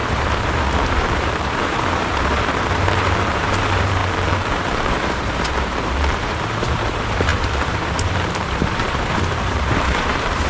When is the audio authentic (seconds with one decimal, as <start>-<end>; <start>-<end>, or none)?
4.0-4.5